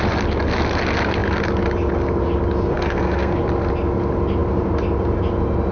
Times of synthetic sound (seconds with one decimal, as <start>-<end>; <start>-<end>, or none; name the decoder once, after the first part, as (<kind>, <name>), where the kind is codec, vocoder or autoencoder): 2.7-3.4 (codec, SNAC)